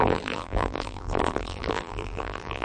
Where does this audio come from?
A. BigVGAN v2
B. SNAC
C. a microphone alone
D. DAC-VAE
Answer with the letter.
A